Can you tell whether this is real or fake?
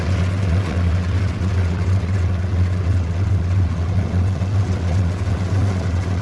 fake